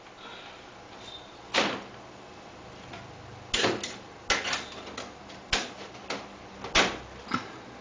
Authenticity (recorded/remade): recorded